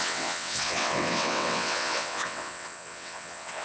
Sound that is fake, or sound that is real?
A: fake